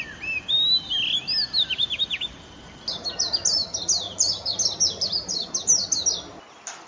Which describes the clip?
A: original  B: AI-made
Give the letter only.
A